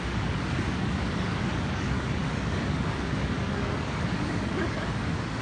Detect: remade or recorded remade